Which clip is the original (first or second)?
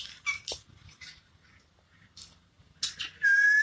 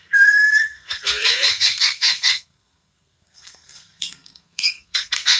first